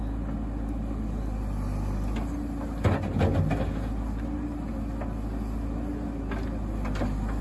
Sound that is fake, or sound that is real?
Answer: real